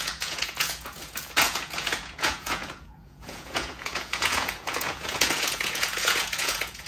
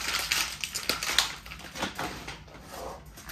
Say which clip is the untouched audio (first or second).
second